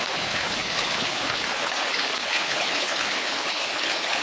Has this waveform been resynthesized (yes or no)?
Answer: yes